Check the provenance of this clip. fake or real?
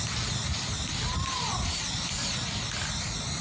real